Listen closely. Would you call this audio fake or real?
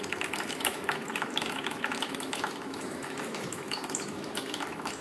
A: fake